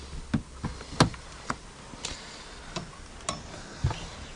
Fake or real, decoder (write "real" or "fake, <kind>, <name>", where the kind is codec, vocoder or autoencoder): real